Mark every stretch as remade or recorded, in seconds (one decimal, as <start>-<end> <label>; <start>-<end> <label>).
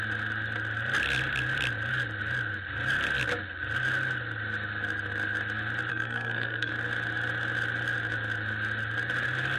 0.0-5.9 recorded; 5.9-6.7 remade; 6.7-9.6 recorded